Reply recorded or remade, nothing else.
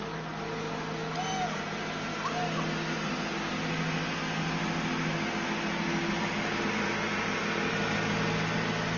recorded